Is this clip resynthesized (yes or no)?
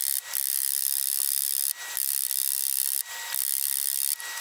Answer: no